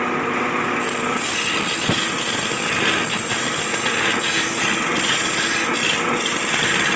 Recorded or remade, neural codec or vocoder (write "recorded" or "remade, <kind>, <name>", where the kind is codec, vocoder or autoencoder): recorded